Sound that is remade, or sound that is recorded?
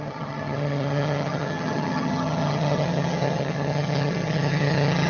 remade